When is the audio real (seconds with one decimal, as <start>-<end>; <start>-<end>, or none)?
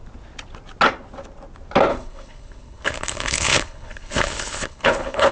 0.0-1.9